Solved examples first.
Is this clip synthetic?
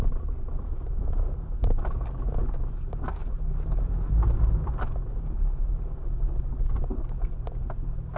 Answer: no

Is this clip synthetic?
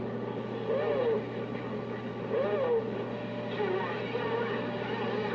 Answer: no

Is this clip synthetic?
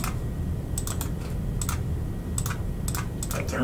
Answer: no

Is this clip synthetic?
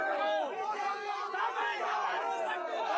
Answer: no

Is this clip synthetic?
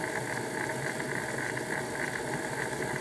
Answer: no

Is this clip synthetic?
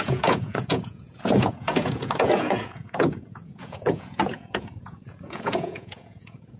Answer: yes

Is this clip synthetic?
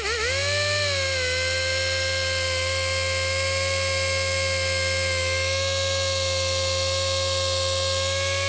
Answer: no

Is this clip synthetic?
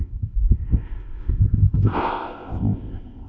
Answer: yes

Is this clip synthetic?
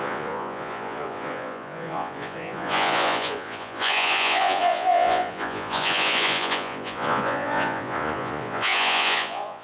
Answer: yes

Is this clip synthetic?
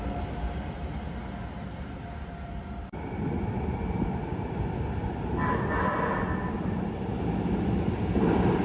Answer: no